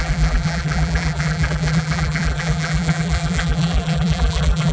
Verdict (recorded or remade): remade